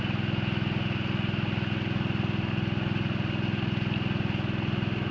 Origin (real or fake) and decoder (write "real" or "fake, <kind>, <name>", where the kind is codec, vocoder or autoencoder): real